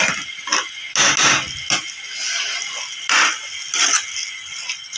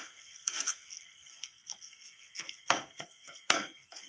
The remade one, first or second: second